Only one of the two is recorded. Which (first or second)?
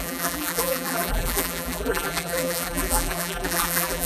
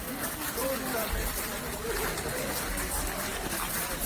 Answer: second